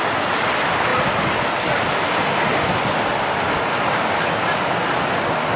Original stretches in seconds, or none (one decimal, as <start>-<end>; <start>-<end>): 0.0-5.6